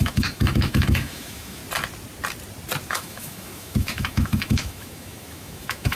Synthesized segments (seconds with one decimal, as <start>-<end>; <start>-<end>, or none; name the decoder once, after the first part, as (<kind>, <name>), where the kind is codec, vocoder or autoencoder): 0.0-1.6 (autoencoder, DAC-VAE); 2.9-6.0